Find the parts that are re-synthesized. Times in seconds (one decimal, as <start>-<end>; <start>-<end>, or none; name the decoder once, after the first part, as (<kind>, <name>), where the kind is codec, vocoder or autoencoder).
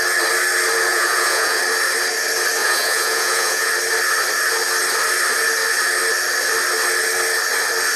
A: 0.9-1.6 (vocoder, Vocos); 2.6-3.7